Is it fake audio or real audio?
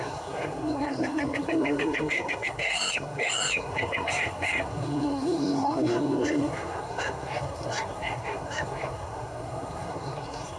fake